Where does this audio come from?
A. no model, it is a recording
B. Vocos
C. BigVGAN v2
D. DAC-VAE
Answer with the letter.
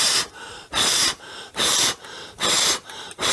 C